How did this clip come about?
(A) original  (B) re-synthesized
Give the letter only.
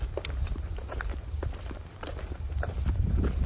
A